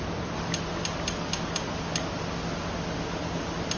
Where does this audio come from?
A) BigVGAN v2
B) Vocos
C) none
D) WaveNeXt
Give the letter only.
C